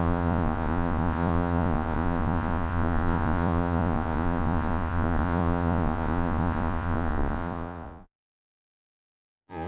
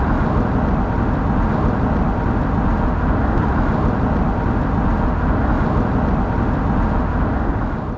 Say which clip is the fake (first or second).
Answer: first